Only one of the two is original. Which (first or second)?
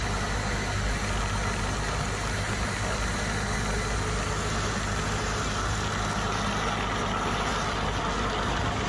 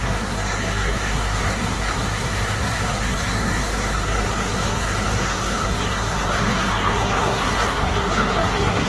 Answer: first